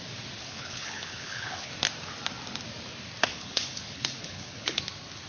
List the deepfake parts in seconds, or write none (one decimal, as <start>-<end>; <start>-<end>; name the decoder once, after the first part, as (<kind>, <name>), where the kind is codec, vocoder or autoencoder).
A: 0.4-1.7 (codec, HILCodec); 3.3-4.8